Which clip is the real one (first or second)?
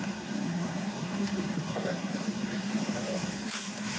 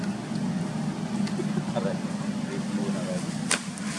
second